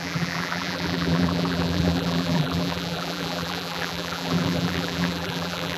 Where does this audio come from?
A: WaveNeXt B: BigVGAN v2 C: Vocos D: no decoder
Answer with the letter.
B